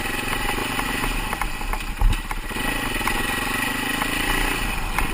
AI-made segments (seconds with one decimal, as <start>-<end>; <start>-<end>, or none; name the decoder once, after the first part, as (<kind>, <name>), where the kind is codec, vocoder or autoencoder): none